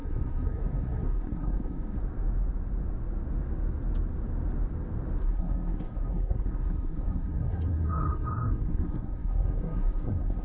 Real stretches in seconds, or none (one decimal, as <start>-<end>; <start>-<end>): 2.0-5.2